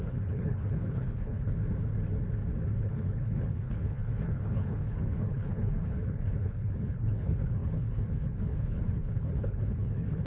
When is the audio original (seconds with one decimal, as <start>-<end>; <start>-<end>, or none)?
1.6-2.8